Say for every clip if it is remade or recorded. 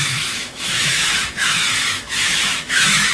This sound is remade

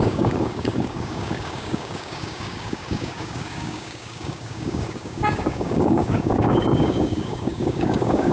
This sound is remade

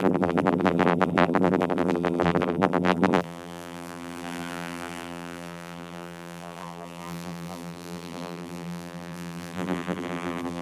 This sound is remade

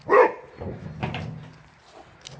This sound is recorded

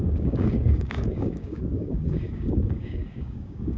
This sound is remade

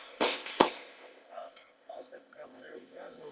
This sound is remade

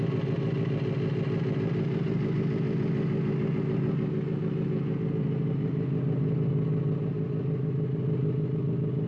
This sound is recorded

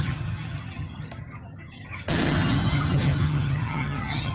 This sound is remade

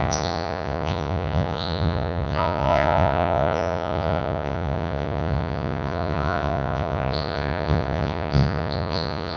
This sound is remade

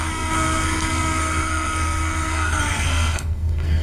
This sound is remade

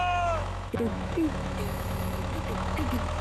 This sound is remade